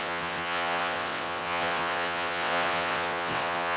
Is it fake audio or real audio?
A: fake